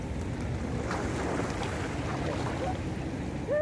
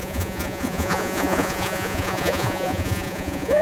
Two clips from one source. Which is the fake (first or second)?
second